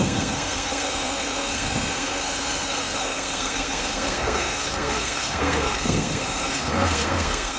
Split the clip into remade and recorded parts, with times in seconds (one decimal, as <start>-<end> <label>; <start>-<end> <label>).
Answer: 0.0-7.6 remade